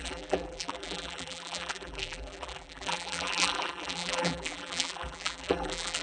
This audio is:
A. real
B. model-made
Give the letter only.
B